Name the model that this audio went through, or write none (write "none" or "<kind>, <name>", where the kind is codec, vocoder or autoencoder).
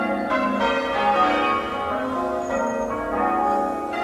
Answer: none